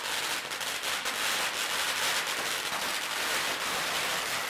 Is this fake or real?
real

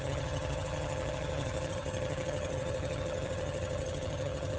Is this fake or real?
fake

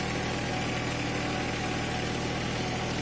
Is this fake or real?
real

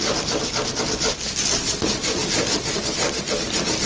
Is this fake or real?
real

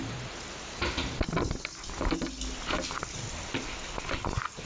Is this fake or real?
real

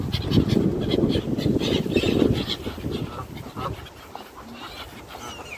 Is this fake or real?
real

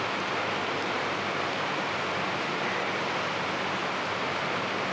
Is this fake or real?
real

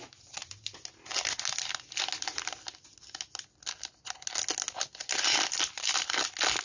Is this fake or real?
real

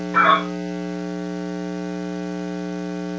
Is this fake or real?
real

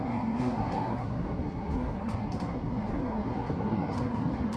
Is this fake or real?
fake